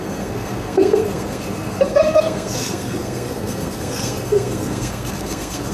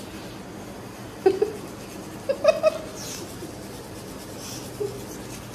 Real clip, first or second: second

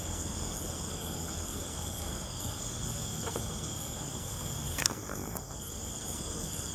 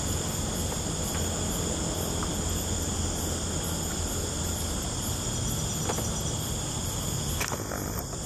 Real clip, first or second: second